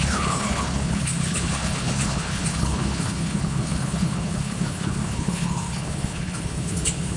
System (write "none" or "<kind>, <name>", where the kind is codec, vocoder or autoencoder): codec, HILCodec